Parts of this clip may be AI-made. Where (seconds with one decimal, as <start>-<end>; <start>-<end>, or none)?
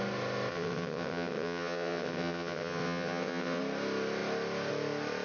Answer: 0.5-3.6